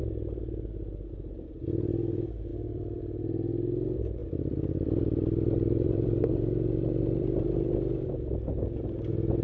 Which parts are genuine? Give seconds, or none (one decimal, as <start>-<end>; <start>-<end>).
0.0-2.5; 3.0-4.2; 8.1-9.4